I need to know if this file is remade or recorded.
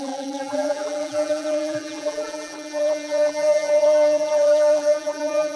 remade